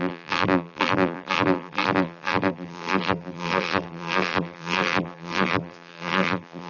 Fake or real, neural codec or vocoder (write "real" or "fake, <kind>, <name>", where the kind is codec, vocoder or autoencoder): fake, vocoder, BigVGAN v2